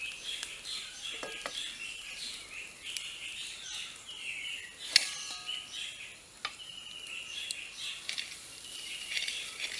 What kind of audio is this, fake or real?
real